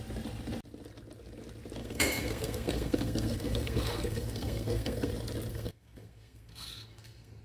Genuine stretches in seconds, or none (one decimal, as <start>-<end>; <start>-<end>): 0.0-1.8; 5.1-5.5

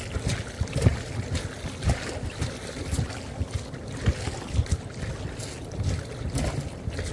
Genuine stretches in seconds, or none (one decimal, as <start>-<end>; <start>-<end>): 0.0-7.1

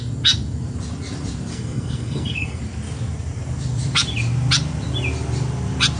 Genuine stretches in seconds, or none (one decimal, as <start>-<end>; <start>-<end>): 0.0-1.5; 2.6-6.0